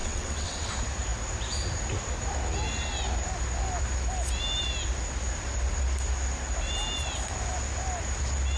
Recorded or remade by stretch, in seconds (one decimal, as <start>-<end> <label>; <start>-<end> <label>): 0.0-0.7 remade; 0.7-8.6 recorded